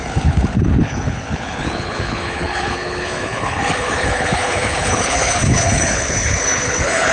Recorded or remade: remade